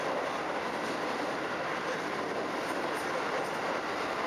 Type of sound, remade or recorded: recorded